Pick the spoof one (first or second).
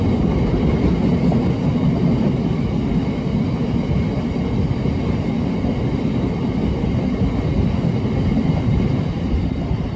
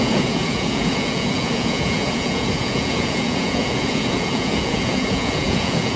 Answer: second